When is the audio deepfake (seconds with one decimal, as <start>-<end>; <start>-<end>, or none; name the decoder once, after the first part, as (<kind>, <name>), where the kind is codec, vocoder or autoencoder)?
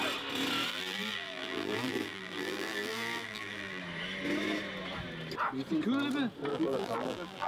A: 0.7-3.8 (vocoder, BigVGAN v2); 6.5-7.5